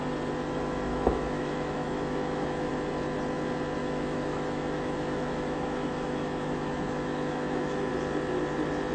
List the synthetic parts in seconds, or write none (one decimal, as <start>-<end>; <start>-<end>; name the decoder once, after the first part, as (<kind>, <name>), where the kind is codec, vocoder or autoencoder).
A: 0.9-2.7 (autoencoder, DAC-VAE); 3.8-7.9